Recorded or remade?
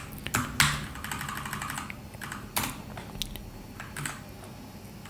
recorded